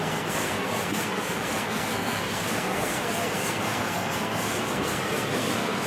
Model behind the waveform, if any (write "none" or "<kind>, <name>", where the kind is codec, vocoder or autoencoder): codec, SNAC